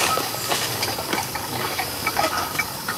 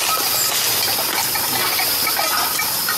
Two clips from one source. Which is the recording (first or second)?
second